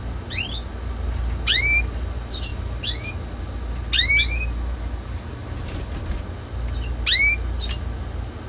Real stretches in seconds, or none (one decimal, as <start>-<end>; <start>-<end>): 0.0-8.5